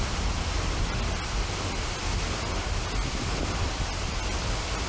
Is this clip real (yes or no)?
yes